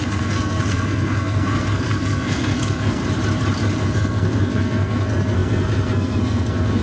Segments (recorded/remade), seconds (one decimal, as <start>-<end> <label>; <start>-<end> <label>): 0.0-3.0 remade; 3.0-3.8 recorded; 3.8-6.8 remade